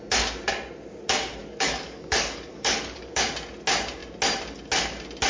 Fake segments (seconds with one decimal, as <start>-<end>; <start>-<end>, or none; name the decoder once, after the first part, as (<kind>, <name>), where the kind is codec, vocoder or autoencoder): 1.4-3.3 (codec, DAC)